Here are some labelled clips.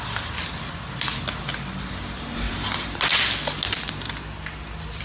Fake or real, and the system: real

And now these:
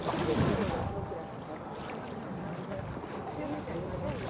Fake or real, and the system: real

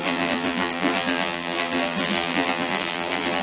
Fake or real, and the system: fake, vocoder, BigVGAN v2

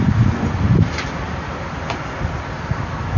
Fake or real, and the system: real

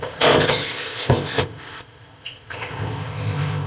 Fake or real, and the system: fake, codec, ZipCodec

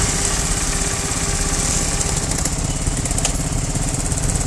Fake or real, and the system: real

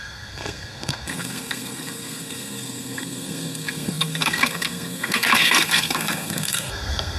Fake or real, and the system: fake, codec, SNAC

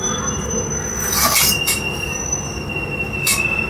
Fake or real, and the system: real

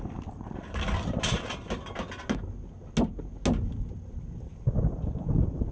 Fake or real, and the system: real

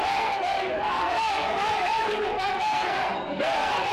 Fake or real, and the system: fake, codec, SNAC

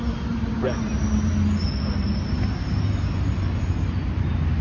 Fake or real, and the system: real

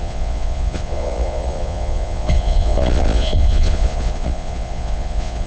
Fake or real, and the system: fake, vocoder, Vocos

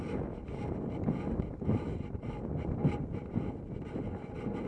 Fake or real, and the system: real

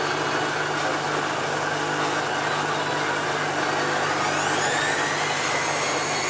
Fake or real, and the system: real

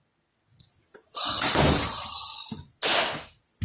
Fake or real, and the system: real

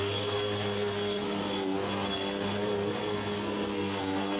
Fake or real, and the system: fake, codec, SNAC